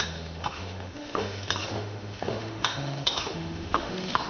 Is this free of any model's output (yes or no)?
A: no